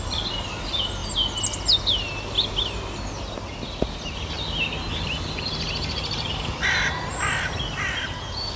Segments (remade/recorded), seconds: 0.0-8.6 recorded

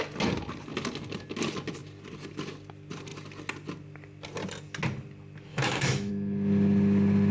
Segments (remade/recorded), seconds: 0.0-5.5 recorded; 5.5-6.1 remade; 6.1-7.3 recorded

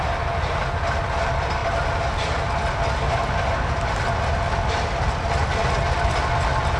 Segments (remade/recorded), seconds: 0.0-6.8 recorded

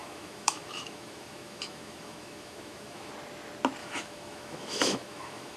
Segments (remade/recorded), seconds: 0.0-3.1 remade; 3.1-3.8 recorded; 3.8-5.6 remade

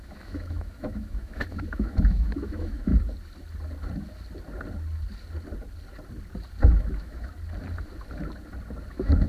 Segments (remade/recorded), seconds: 0.0-2.9 remade; 2.9-6.7 recorded; 6.7-7.3 remade; 7.3-8.9 recorded; 8.9-9.3 remade

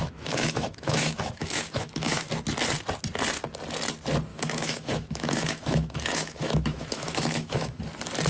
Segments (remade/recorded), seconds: 0.0-2.3 remade; 2.3-4.3 recorded; 4.3-7.8 remade; 7.8-8.3 recorded

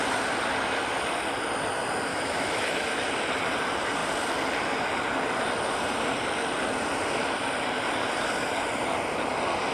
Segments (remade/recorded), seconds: 0.0-2.1 recorded; 2.1-2.9 remade; 2.9-9.7 recorded